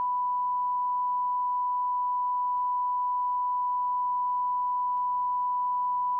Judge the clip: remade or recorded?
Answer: recorded